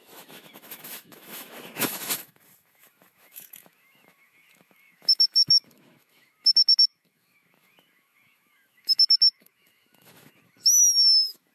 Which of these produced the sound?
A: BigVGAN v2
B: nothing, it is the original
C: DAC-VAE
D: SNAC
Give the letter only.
C